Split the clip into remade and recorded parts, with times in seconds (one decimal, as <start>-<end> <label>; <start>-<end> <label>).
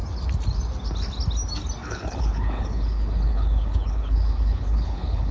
0.0-1.8 recorded; 1.8-5.3 remade